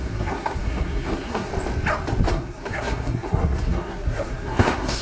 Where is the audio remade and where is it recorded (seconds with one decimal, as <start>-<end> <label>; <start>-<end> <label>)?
0.0-1.5 remade; 1.5-2.3 recorded; 2.3-5.0 remade